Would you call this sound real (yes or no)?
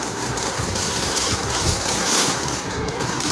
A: no